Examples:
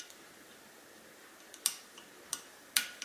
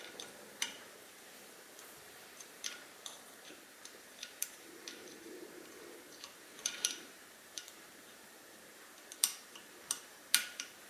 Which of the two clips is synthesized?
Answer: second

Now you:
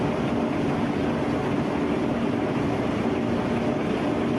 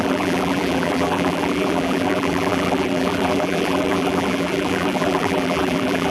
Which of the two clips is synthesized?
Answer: second